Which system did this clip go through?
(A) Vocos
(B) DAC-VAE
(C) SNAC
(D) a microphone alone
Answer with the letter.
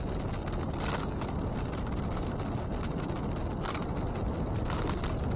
D